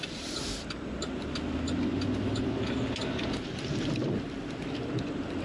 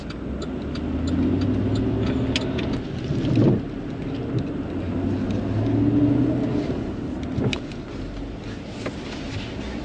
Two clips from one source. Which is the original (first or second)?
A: second